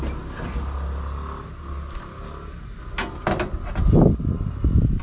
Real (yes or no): yes